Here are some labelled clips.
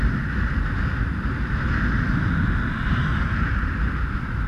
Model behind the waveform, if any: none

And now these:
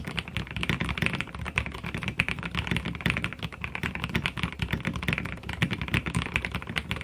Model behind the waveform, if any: none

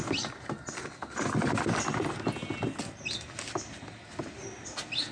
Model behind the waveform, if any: none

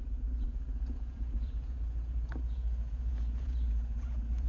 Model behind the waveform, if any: vocoder, Vocos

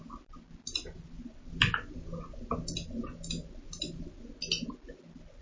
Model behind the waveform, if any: none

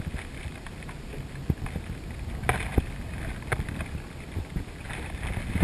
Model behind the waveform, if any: none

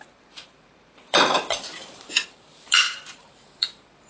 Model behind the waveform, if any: vocoder, BigVGAN v2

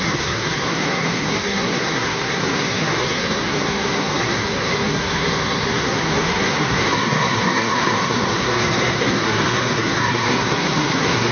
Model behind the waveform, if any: codec, SNAC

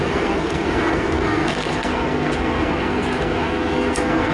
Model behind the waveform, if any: codec, SNAC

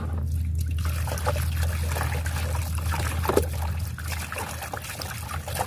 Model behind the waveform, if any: none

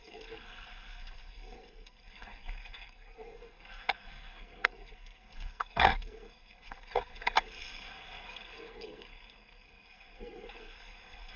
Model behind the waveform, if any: codec, SNAC